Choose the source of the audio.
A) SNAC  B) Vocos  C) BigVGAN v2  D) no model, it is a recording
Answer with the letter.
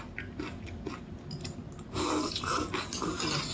D